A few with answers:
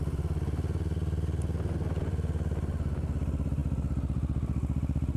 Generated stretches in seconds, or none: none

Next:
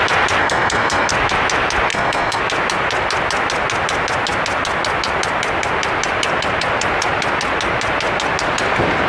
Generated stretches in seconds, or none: 0.4-1.1 (codec, SNAC); 1.9-2.4

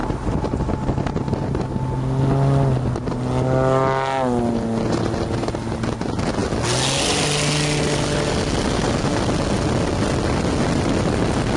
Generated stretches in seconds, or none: none

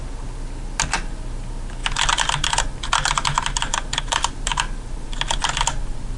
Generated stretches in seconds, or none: none

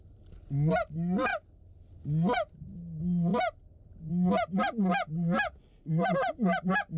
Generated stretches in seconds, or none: none

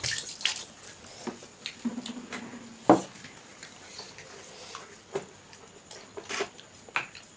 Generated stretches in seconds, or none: none

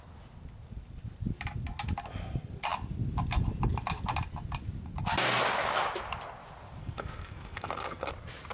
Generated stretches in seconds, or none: 6.8-8.1 (codec, SNAC)